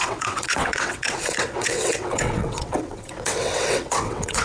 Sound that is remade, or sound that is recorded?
remade